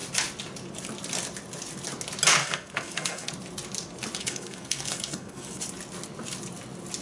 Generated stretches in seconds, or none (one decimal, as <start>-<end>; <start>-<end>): 2.4-3.3; 4.2-5.6